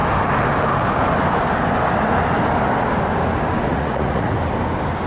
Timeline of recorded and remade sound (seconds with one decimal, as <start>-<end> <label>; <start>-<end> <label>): 0.0-3.7 recorded; 3.7-4.3 remade; 4.3-5.1 recorded